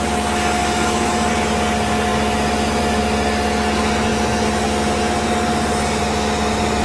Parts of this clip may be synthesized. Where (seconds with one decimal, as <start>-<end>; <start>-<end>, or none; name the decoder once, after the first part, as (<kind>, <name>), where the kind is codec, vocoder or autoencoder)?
0.6-1.3 (autoencoder, DAC-VAE)

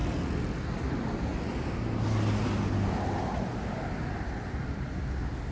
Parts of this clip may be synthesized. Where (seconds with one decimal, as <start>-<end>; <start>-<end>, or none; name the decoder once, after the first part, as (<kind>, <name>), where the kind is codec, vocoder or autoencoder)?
0.0-0.9 (vocoder, BigVGAN v2)

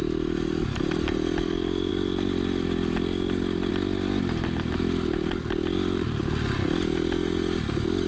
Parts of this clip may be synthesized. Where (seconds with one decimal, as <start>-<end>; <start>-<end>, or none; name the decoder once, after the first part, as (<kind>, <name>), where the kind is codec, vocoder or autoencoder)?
none

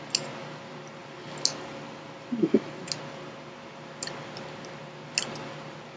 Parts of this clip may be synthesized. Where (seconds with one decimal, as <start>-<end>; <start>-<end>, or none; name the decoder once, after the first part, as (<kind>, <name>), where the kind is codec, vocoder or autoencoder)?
none

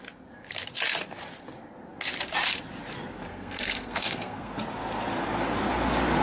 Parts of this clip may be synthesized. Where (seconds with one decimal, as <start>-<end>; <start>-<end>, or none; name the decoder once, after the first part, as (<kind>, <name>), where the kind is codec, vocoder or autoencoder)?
3.3-4.5 (codec, SNAC)

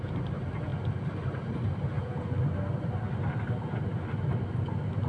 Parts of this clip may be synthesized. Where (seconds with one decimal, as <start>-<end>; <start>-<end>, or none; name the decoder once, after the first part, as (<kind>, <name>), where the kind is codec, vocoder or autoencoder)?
none